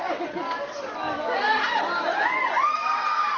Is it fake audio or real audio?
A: fake